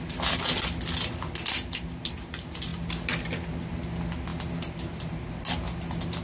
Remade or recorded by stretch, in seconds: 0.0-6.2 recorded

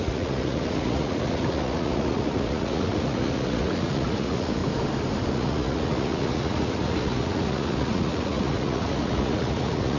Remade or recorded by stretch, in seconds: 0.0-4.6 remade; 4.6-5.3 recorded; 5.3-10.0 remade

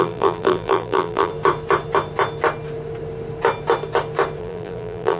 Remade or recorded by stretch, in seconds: 0.0-1.3 remade; 1.3-4.4 recorded; 4.4-5.2 remade